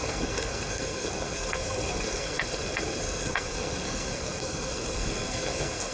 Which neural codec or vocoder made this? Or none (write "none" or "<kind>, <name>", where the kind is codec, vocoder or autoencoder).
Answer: codec, SNAC